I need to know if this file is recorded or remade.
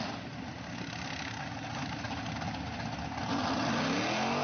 recorded